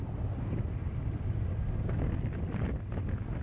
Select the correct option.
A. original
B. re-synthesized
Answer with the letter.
A